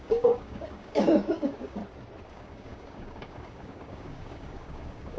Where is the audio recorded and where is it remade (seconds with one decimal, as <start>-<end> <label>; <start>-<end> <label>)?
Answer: 0.0-1.8 remade; 1.8-2.3 recorded; 2.3-5.2 remade